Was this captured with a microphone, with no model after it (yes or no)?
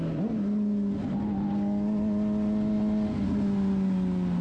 yes